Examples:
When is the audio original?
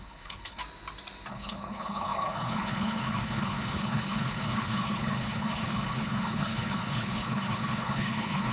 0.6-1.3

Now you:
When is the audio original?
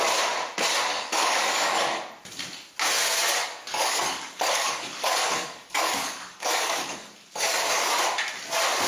0.0-0.9; 2.0-3.4; 8.0-8.9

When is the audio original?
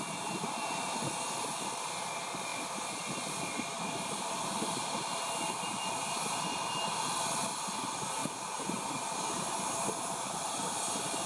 0.0-11.3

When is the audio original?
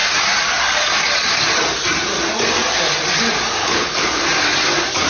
0.0-3.6; 4.2-5.1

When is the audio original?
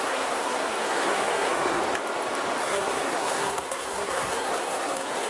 1.8-2.6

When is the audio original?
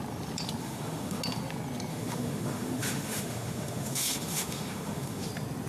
0.0-0.6; 1.2-1.9; 5.3-5.7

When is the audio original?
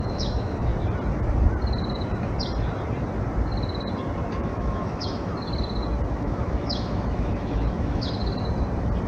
0.7-4.4; 5.3-6.1; 8.2-9.1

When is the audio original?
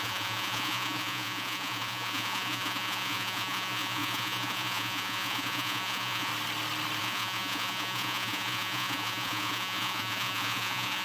6.3-7.0